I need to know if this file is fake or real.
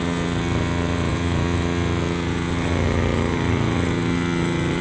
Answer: fake